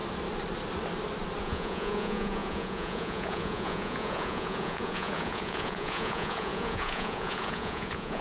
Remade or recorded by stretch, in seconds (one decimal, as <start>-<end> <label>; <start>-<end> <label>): 0.0-1.4 recorded; 1.4-8.2 remade